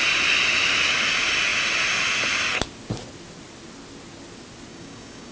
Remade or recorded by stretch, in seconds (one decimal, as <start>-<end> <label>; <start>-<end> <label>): 0.0-4.7 recorded; 4.7-5.3 remade